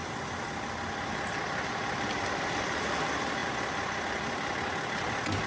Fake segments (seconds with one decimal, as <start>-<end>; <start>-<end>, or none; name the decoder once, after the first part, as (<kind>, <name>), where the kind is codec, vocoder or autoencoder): none

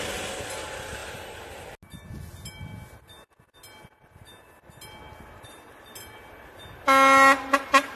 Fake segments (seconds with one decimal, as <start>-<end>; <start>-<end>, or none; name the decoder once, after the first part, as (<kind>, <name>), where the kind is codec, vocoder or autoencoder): none